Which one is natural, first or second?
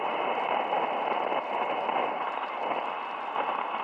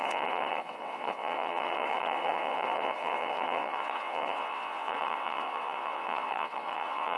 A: first